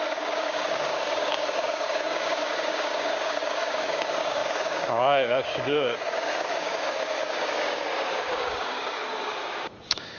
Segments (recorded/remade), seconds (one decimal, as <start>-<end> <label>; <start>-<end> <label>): 0.0-10.2 remade